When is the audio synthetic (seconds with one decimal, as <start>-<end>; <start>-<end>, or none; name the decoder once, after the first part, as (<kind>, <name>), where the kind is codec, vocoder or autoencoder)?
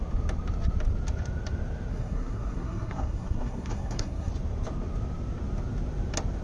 1.9-4.3 (codec, SNAC)